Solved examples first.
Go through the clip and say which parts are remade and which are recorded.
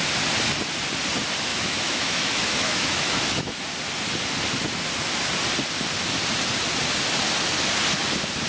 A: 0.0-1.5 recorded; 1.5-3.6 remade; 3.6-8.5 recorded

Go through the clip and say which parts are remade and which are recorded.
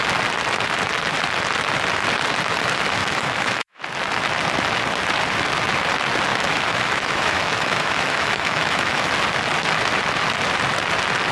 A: 0.0-3.0 recorded; 3.0-3.8 remade; 3.8-6.3 recorded; 6.3-9.1 remade; 9.1-11.3 recorded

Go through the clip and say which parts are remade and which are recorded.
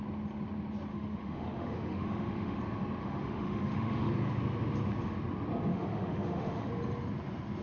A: 0.0-0.9 recorded; 0.9-2.6 remade; 2.6-3.0 recorded; 3.0-4.1 remade; 4.1-5.7 recorded; 5.7-6.7 remade; 6.7-7.6 recorded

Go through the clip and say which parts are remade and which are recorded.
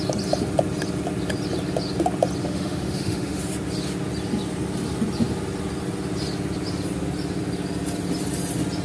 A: 0.0-2.4 recorded; 2.4-3.4 remade; 3.4-8.8 recorded